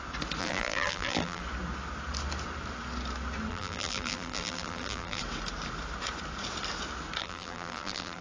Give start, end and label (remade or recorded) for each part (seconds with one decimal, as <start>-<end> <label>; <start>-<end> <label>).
0.0-0.4 recorded; 0.4-1.4 remade; 1.4-3.5 recorded; 3.5-5.2 remade; 5.2-7.2 recorded; 7.2-8.2 remade

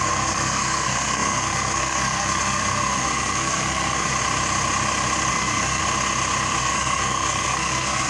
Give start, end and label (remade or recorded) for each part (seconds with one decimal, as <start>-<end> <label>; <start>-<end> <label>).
0.0-4.1 remade; 4.1-5.3 recorded; 5.3-5.8 remade; 5.8-6.6 recorded; 6.6-8.1 remade

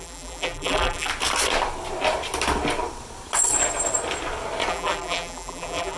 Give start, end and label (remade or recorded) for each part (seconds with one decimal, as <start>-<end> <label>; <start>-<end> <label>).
0.0-1.1 remade; 1.1-4.7 recorded; 4.7-6.0 remade

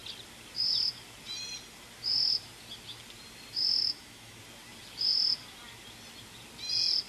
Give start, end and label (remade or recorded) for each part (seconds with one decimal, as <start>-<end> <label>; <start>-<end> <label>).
0.0-3.8 recorded; 3.8-4.4 remade; 4.4-7.1 recorded